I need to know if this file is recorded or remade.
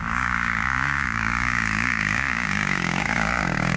remade